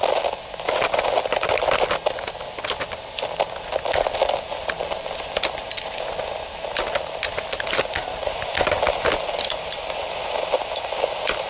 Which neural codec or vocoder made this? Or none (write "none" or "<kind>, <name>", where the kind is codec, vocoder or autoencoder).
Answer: none